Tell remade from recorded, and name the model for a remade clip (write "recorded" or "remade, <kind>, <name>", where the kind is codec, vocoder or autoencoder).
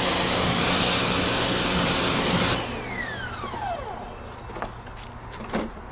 recorded